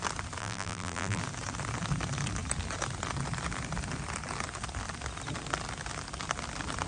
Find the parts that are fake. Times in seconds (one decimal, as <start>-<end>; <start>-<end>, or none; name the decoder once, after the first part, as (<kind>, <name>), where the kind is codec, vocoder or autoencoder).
0.4-1.2 (vocoder, BigVGAN v2)